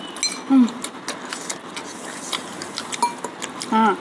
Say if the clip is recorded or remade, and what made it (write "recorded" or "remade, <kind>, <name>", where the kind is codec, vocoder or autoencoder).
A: recorded